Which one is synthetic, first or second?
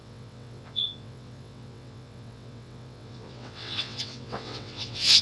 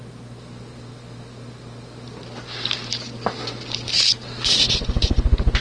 first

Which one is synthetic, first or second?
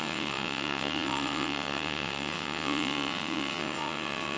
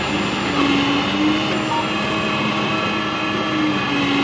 first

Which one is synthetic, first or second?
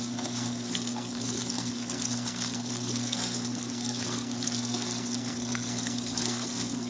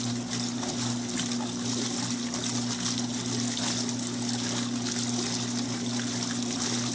first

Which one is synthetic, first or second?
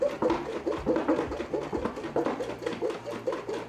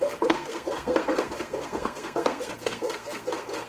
second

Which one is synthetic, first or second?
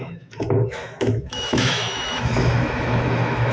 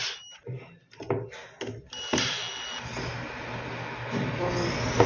first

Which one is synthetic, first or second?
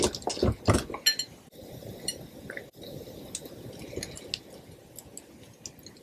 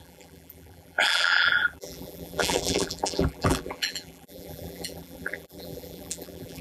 second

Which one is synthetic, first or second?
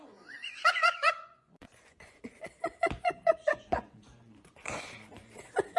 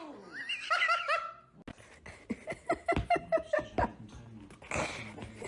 first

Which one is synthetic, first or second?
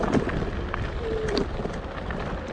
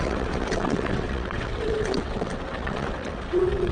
second